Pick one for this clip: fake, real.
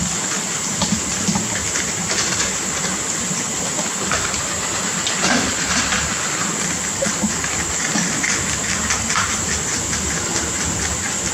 real